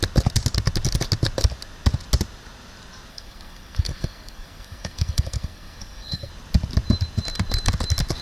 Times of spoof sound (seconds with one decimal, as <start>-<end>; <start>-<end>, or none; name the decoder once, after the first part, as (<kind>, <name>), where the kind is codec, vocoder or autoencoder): 3.1-6.3 (codec, SNAC)